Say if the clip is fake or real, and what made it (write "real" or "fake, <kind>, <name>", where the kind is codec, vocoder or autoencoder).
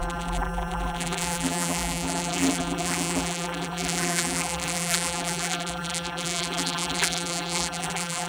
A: fake, vocoder, BigVGAN v2